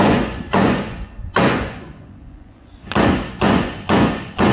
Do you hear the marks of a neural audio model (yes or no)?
yes